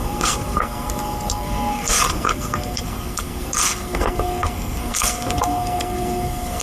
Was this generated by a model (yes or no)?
yes